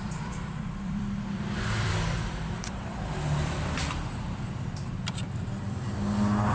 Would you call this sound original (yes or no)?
no